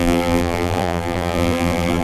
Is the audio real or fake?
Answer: fake